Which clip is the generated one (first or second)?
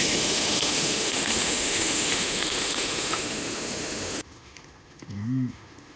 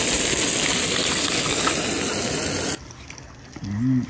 first